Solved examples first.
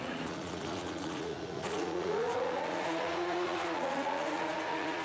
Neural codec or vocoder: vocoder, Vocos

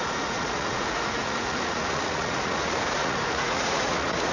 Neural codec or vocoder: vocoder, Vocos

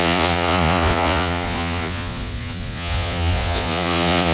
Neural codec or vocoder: vocoder, Vocos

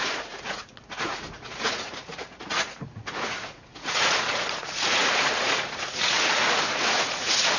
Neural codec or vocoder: vocoder, Vocos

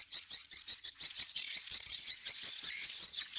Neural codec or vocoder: vocoder, Vocos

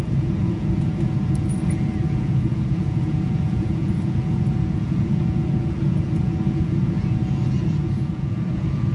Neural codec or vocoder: vocoder, Vocos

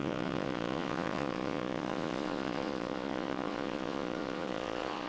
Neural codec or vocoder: vocoder, Vocos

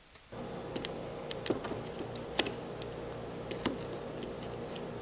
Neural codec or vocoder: none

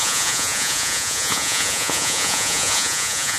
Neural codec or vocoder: vocoder, Vocos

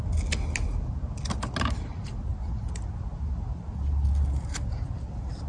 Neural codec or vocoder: none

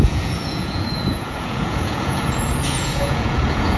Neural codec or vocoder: vocoder, Vocos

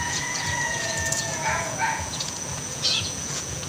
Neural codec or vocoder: vocoder, Vocos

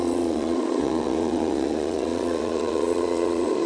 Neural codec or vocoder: vocoder, Vocos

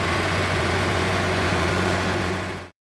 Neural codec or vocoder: vocoder, Vocos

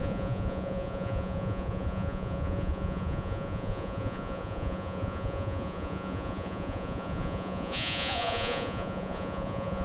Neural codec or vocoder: vocoder, Vocos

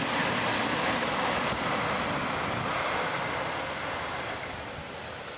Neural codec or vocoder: none